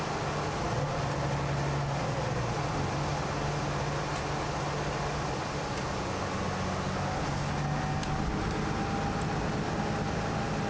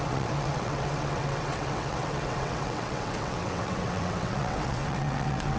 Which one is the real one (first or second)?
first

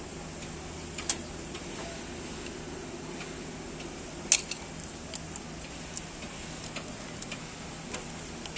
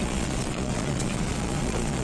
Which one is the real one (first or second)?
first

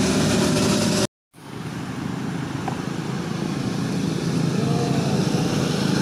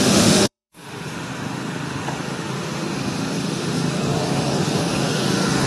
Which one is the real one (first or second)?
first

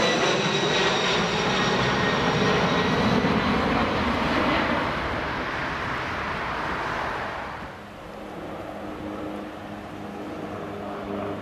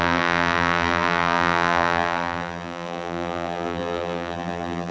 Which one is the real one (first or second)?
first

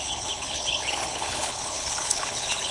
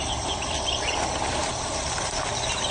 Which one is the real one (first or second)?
second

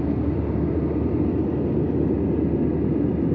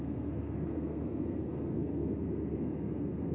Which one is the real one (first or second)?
first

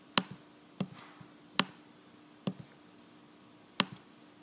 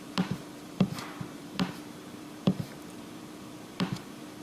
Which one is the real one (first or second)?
first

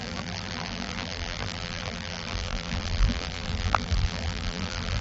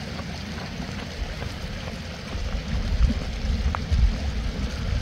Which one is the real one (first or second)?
second